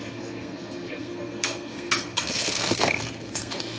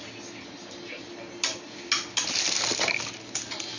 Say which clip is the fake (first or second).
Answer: first